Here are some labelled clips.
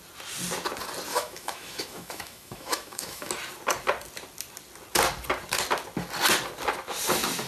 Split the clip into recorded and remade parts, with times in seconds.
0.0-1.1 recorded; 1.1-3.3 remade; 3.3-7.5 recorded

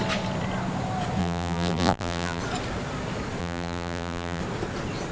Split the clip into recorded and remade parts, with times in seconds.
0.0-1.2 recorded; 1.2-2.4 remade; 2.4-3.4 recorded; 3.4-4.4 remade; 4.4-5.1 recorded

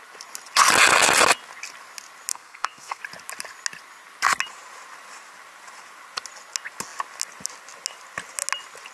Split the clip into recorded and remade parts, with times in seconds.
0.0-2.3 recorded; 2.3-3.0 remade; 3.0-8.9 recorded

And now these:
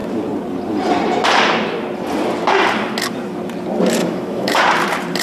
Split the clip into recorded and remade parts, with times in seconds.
0.0-4.0 recorded; 4.0-4.6 remade; 4.6-5.2 recorded

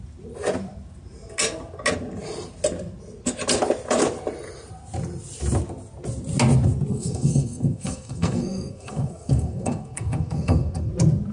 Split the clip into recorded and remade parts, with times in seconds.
0.0-6.9 recorded; 6.9-10.9 remade; 10.9-11.3 recorded

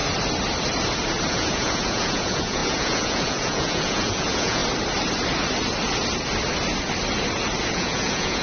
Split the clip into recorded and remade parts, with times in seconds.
0.0-1.3 recorded; 1.3-4.6 remade; 4.6-7.7 recorded; 7.7-8.4 remade

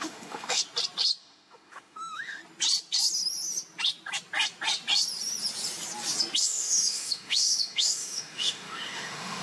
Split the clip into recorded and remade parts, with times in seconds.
0.0-0.6 remade; 0.6-1.2 recorded; 1.2-2.4 remade; 2.4-6.4 recorded; 6.4-9.4 remade

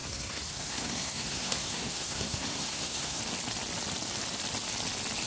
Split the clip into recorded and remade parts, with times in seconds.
0.0-3.2 remade; 3.2-5.3 recorded